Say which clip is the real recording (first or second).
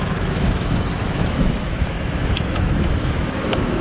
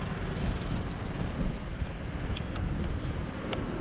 second